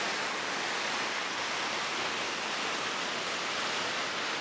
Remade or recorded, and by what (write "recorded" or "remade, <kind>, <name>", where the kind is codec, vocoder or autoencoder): recorded